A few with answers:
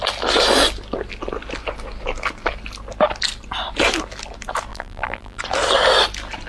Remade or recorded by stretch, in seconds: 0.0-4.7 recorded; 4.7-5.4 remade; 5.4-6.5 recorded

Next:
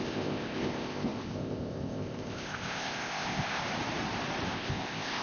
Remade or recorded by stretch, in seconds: 0.0-3.6 remade; 3.6-4.5 recorded; 4.5-5.2 remade

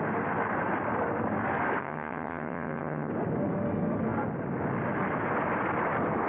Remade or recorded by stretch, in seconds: 0.0-1.8 recorded; 1.8-3.1 remade; 3.1-6.3 recorded